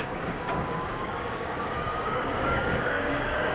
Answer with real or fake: fake